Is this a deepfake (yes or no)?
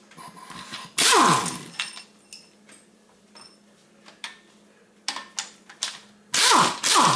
no